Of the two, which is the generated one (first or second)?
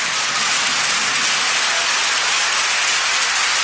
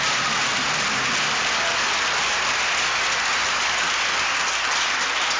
first